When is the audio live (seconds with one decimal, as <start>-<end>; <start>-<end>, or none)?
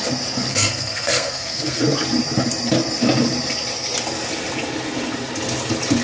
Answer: 0.0-0.5; 1.8-6.0